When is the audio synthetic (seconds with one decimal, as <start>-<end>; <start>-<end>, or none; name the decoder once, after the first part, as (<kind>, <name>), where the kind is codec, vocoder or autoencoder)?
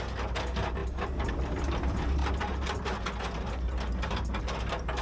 none